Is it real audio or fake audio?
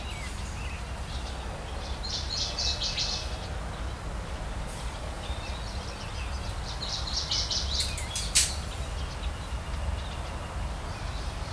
real